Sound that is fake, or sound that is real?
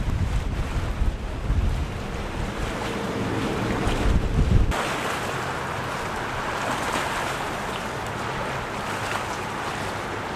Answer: real